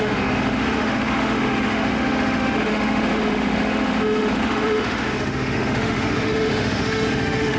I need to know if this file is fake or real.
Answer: fake